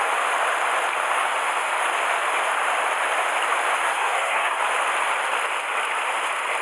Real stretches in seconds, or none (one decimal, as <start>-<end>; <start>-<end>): 0.0-3.8; 4.6-6.6